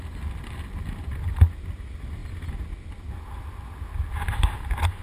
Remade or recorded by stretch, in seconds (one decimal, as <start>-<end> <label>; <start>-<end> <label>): 0.0-5.0 recorded